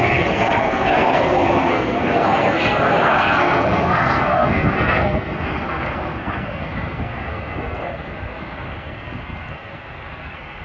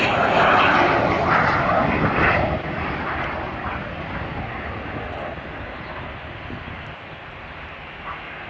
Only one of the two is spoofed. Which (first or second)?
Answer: first